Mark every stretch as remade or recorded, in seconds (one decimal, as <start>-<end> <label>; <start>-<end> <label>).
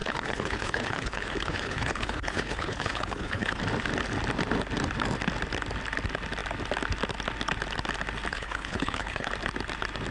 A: 0.0-3.6 remade; 3.6-8.3 recorded; 8.3-9.3 remade; 9.3-10.1 recorded